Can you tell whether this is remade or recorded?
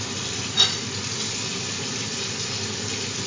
recorded